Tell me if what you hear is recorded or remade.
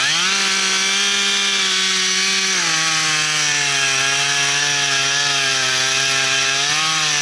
recorded